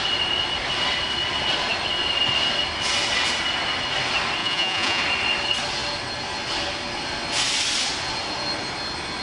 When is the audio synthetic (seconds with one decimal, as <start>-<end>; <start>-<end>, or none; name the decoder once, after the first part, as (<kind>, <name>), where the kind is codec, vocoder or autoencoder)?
4.4-5.0 (vocoder, Vocos)